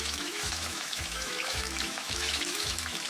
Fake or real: fake